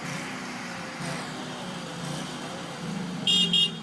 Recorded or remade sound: remade